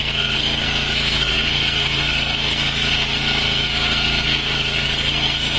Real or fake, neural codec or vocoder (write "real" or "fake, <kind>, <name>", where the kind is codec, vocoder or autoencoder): fake, codec, SNAC